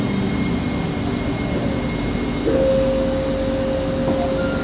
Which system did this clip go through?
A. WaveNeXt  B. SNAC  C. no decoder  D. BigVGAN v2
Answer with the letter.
C